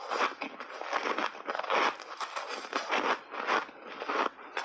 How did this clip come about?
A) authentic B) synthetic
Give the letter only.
A